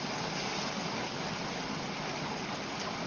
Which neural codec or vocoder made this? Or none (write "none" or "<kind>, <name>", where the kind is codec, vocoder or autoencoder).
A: none